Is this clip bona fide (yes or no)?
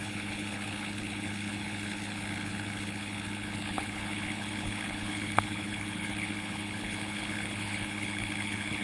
no